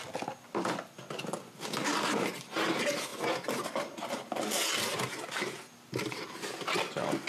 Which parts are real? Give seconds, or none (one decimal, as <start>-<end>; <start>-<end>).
0.0-7.3